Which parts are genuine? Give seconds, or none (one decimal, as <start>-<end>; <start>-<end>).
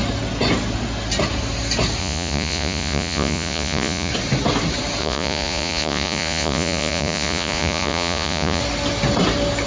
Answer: 0.0-2.0; 4.1-5.0; 8.6-9.7